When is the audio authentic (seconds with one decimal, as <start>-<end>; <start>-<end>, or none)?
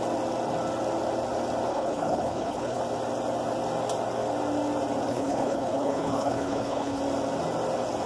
0.0-1.7; 2.8-5.1; 7.0-8.1